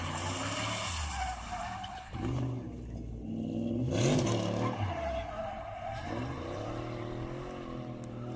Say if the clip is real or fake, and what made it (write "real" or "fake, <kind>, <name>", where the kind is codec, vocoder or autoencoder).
real